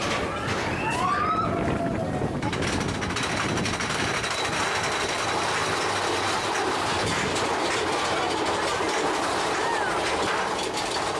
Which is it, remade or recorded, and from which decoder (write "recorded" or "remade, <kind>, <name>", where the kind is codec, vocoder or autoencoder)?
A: recorded